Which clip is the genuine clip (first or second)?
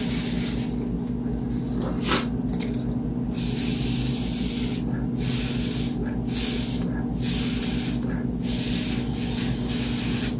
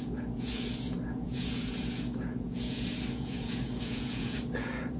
first